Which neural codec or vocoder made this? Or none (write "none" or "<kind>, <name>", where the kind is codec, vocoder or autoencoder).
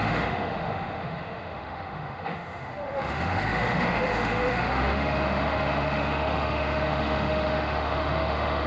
autoencoder, DAC-VAE